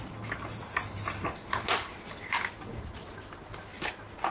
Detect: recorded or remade recorded